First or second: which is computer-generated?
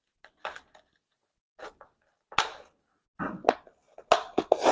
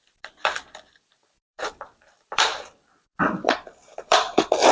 second